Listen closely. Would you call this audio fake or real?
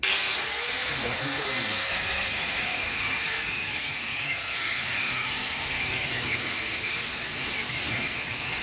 fake